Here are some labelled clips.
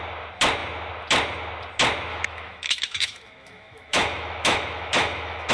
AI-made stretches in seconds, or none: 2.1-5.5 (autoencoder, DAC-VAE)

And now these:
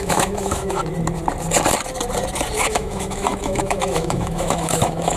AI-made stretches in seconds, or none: 0.0-0.8 (autoencoder, DAC-VAE); 2.6-5.2

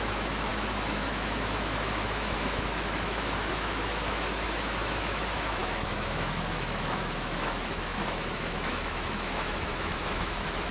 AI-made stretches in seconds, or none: 0.0-10.7 (autoencoder, DAC-VAE)

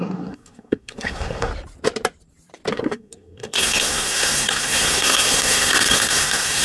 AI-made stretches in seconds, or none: 0.0-1.5 (codec, SNAC); 2.7-6.6

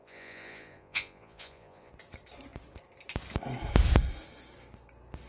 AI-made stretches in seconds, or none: 0.0-1.9 (vocoder, Vocos)